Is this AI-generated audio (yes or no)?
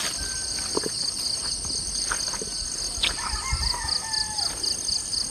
no